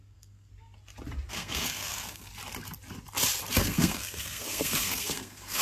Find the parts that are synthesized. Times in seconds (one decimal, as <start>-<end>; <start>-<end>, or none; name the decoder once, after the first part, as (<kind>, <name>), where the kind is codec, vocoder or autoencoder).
0.0-0.5 (codec, SNAC); 1.3-2.3; 3.6-5.6